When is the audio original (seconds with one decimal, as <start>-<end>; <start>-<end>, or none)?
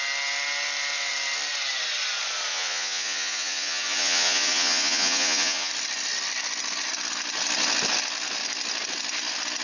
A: 0.0-2.5; 5.7-9.6